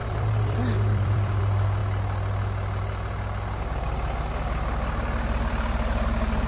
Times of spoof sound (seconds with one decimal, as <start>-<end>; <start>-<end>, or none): 0.0-1.4